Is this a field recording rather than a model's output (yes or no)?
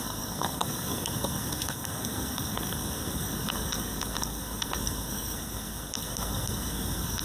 no